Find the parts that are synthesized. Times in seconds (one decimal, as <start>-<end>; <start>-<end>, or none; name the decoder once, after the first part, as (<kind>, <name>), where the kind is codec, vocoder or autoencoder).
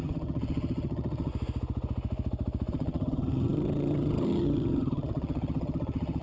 0.0-1.3 (vocoder, HiFi-GAN); 2.7-6.2